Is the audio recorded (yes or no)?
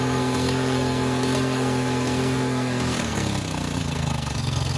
no